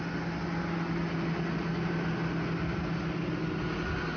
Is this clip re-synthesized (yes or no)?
no